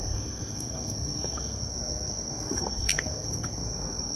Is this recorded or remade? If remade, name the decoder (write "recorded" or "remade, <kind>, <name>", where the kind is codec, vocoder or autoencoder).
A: remade, codec, SNAC